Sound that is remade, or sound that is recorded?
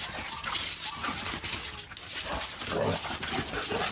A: recorded